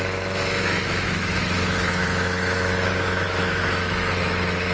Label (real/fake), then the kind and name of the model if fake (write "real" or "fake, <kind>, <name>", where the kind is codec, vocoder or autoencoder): fake, autoencoder, DAC-VAE